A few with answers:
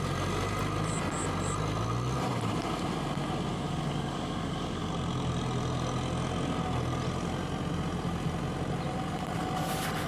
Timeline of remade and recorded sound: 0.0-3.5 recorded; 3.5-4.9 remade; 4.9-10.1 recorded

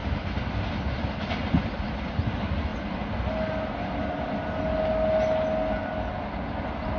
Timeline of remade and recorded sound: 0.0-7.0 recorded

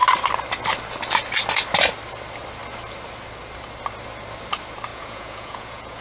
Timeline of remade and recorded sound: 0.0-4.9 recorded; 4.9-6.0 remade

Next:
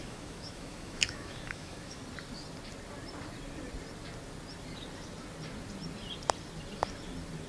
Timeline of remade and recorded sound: 0.0-2.0 remade; 2.0-7.5 recorded

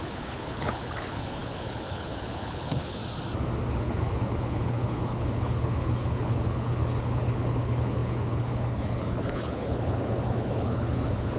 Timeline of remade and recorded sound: 0.0-3.0 remade; 3.0-3.7 recorded; 3.7-11.4 remade